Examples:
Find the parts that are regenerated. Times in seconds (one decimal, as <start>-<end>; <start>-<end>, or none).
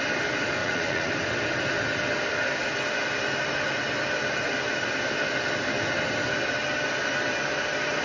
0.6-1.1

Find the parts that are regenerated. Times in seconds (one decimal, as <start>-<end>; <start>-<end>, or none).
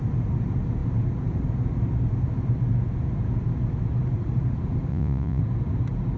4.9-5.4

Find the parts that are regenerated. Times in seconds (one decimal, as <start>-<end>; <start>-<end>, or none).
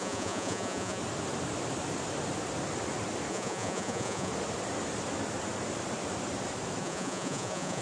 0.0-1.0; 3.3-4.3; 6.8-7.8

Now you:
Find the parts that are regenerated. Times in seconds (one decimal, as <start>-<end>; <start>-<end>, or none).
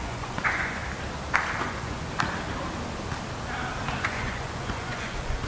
0.0-0.8; 1.6-2.1; 4.0-5.5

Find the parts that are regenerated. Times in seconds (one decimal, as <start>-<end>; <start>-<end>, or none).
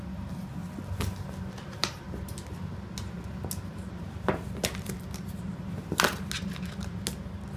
none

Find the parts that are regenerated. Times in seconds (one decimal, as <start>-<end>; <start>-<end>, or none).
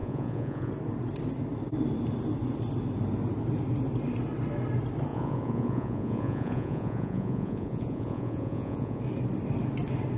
0.0-0.7; 5.1-9.0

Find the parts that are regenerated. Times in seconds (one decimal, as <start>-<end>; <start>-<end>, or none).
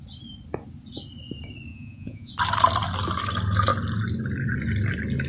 1.7-2.3